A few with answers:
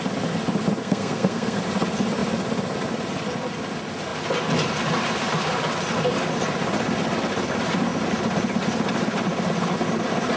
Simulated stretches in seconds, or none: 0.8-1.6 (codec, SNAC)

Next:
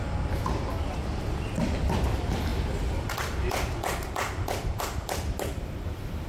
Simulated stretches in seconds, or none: none

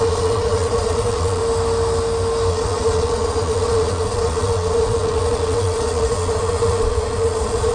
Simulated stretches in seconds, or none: 0.0-1.4 (vocoder, Vocos); 2.5-7.7

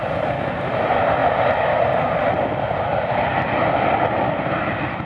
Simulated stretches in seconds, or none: 0.0-1.2 (vocoder, BigVGAN v2); 4.3-5.1

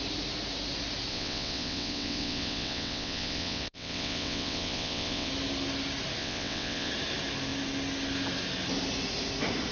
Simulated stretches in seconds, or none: 1.1-5.3 (vocoder, WaveNeXt); 6.2-6.9

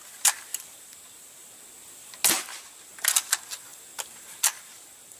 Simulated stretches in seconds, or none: 0.5-1.5 (vocoder, BigVGAN v2)

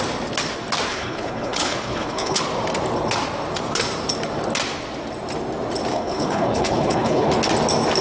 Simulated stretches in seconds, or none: 0.9-2.4 (codec, HILCodec); 5.9-7.3